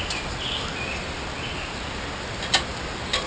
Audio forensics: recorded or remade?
recorded